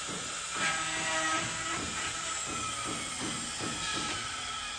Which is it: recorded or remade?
recorded